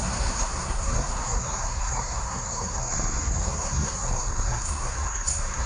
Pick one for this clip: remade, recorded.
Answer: remade